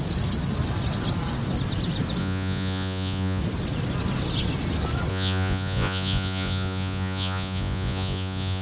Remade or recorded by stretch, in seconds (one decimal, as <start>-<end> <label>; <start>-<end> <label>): 0.0-2.2 recorded; 2.2-3.4 remade; 3.4-5.1 recorded; 5.1-8.6 remade